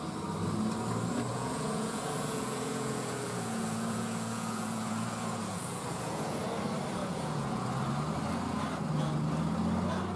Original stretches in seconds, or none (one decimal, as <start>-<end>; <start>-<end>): 0.0-1.3; 6.4-7.0; 7.7-10.2